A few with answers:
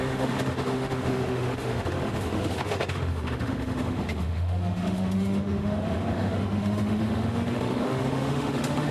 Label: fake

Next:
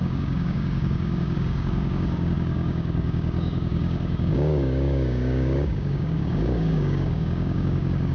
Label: fake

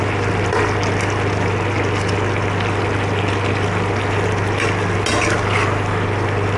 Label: real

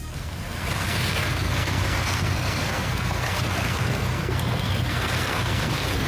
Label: fake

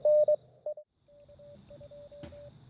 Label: real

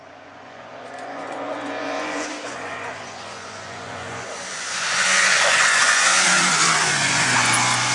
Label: fake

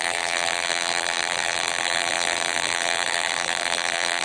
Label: fake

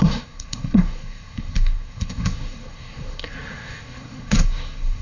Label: fake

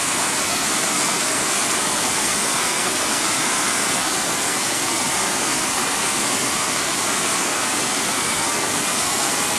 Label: fake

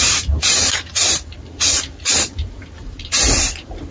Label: fake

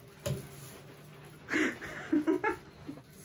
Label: real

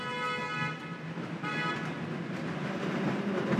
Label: real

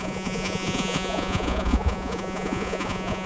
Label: fake